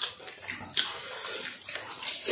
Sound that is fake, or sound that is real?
real